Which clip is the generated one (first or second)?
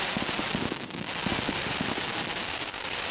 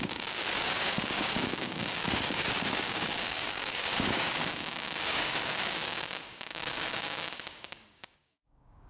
second